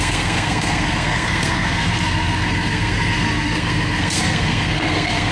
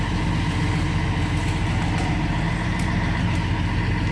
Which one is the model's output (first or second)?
first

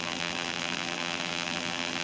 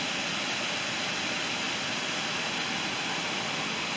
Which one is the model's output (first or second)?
first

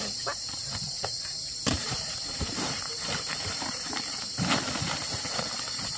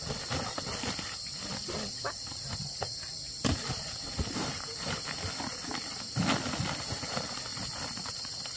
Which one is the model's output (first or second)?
first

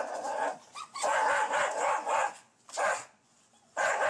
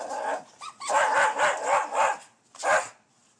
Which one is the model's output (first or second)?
first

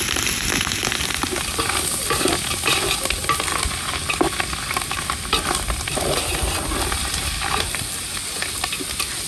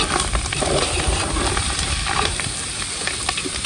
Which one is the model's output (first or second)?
second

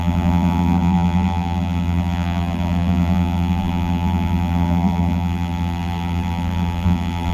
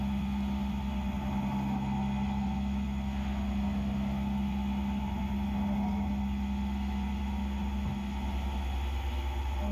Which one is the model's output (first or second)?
first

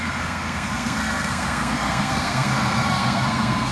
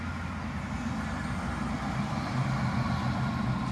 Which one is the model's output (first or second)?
first